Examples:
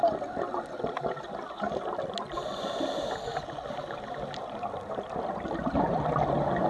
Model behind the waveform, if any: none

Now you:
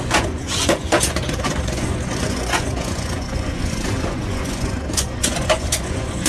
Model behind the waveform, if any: vocoder, Vocos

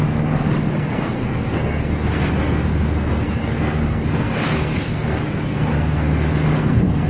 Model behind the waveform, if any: codec, SNAC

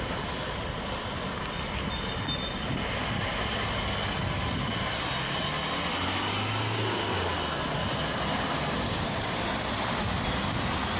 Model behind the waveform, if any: none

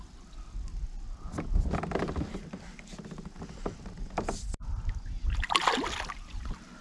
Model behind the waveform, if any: none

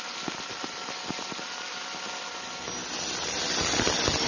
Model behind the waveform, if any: none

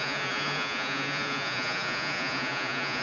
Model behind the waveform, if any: vocoder, Vocos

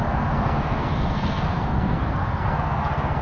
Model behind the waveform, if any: codec, SNAC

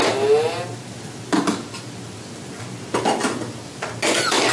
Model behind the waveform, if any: none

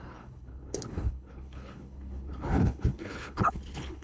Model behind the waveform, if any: codec, HILCodec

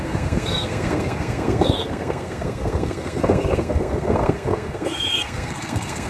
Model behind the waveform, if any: codec, SNAC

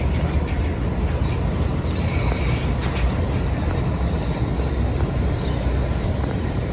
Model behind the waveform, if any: none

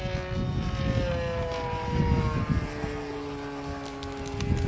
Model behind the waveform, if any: none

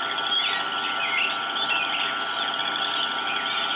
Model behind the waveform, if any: none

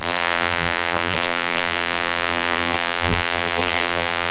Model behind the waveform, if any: vocoder, BigVGAN v2